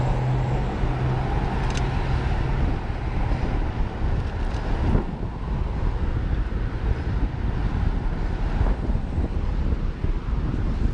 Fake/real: real